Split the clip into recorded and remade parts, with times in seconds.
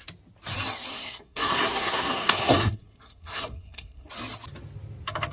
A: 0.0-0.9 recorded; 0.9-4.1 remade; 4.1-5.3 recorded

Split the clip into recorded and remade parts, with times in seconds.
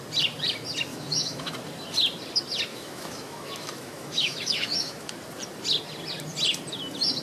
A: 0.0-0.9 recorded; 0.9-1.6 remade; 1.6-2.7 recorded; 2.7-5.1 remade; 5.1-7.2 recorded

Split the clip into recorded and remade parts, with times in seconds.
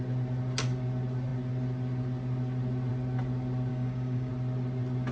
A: 0.0-3.7 recorded; 3.7-4.3 remade; 4.3-5.1 recorded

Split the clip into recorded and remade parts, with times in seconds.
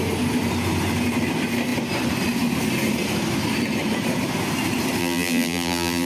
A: 0.0-5.0 recorded; 5.0-6.1 remade